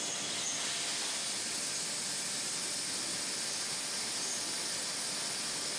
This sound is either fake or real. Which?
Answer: real